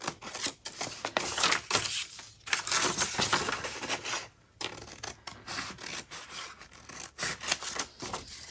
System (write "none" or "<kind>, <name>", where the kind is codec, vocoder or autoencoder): none